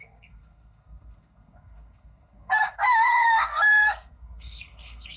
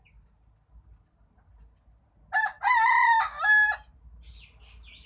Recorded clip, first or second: second